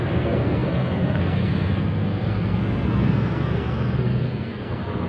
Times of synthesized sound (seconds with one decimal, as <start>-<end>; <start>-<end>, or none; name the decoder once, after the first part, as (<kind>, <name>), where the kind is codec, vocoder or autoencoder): 0.0-5.1 (codec, SNAC)